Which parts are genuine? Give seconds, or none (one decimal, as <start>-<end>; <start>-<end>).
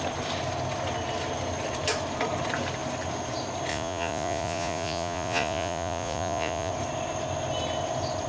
0.0-3.7; 6.7-8.3